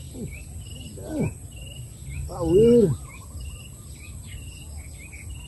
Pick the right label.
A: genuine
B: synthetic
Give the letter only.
A